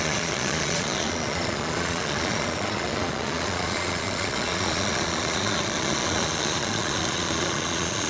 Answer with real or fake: fake